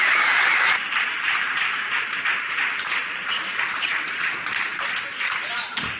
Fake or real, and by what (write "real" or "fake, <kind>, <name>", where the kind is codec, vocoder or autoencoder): fake, vocoder, BigVGAN v2